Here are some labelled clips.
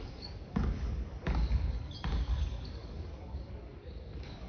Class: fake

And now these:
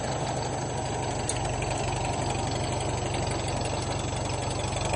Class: real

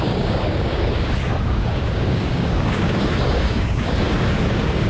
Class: fake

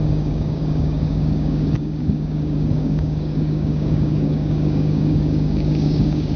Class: fake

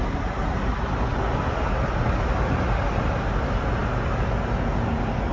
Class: real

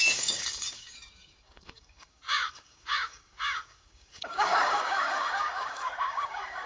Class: fake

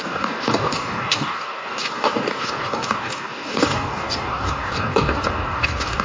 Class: fake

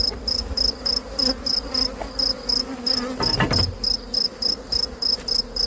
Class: real